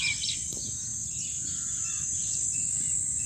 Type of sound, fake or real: real